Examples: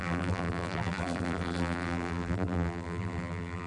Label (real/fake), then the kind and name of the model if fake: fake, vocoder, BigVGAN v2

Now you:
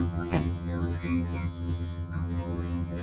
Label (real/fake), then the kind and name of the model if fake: fake, vocoder, HiFi-GAN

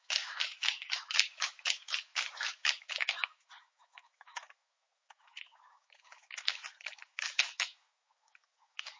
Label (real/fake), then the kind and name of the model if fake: fake, autoencoder, DAC-VAE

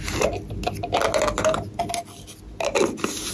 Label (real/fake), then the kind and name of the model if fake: real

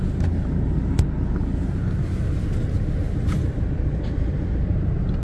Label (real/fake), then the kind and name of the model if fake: real